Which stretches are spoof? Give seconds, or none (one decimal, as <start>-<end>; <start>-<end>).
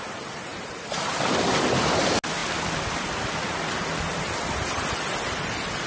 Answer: none